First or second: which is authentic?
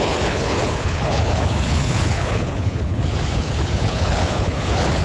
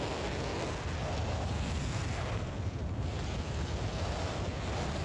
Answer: second